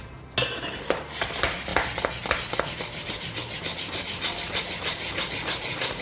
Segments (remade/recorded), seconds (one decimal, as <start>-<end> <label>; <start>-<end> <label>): 0.0-6.0 recorded